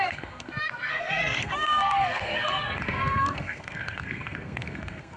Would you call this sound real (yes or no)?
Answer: no